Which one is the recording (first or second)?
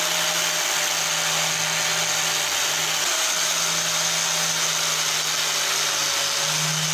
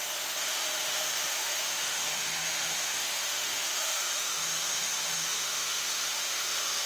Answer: first